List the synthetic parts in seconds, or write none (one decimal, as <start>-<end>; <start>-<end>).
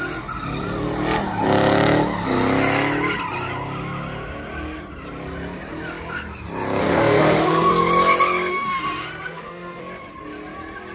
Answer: 6.8-7.7; 8.5-9.8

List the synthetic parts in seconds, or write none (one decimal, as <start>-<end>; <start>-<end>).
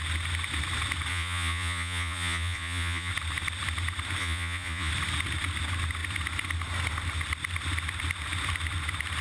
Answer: 1.1-3.1; 4.2-4.9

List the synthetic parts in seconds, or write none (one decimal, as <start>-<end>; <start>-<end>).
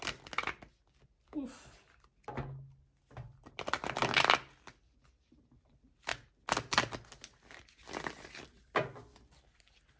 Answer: none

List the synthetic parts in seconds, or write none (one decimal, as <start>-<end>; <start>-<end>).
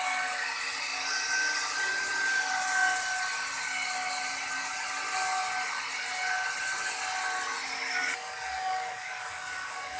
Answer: 8.0-10.0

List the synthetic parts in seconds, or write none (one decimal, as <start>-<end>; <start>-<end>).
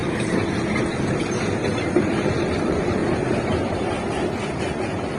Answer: 2.6-3.0; 4.5-5.2